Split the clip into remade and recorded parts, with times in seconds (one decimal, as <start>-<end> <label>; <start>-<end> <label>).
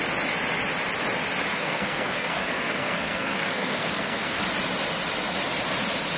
0.0-1.5 recorded; 1.5-4.4 remade; 4.4-6.2 recorded